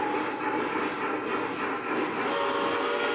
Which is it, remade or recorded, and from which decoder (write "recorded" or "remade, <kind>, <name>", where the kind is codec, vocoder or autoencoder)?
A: recorded